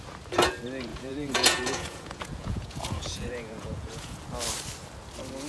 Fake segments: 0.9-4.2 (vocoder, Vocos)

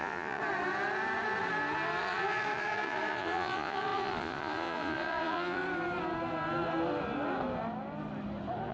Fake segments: 0.0-0.4 (vocoder, Vocos); 2.0-5.6

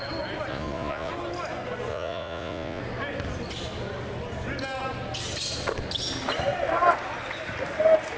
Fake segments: 0.5-1.1 (vocoder, Vocos); 1.9-2.8

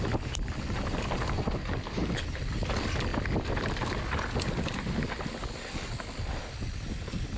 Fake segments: none

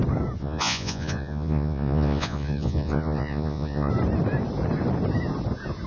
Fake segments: 0.4-3.9 (vocoder, Vocos)

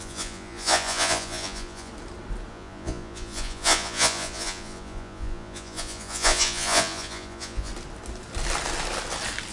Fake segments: 0.0-1.9 (vocoder, Vocos); 2.5-7.7

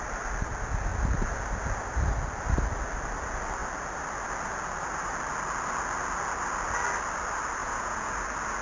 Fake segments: 7.6-8.1 (vocoder, Vocos)